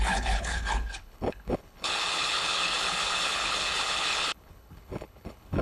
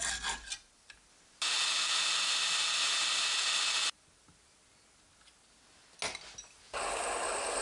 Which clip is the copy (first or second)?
first